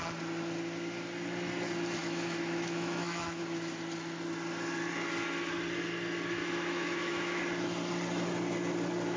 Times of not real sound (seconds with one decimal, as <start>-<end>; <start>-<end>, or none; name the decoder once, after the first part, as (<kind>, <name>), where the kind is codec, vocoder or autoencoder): 2.0-3.4 (autoencoder, DAC-VAE); 6.4-7.4